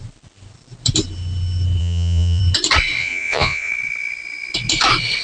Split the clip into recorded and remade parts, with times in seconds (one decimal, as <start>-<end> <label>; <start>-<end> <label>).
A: 0.0-1.8 recorded; 1.8-2.4 remade; 2.4-3.0 recorded; 3.0-3.7 remade; 3.7-5.2 recorded